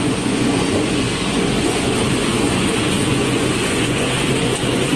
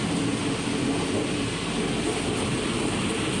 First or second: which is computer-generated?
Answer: first